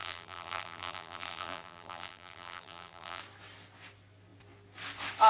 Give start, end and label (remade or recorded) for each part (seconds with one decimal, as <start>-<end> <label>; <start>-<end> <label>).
0.0-3.2 remade; 3.2-5.3 recorded